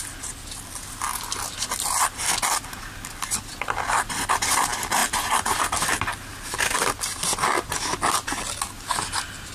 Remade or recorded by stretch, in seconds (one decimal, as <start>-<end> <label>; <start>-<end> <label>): 0.0-9.5 recorded